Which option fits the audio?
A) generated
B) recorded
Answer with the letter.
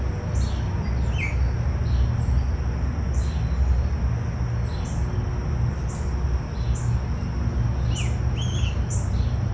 B